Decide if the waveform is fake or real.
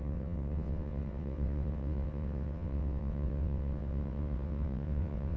fake